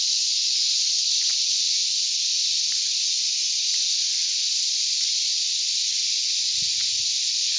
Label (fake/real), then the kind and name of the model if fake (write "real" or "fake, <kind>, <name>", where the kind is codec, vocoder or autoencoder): real